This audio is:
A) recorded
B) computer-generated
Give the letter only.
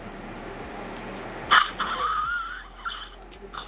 A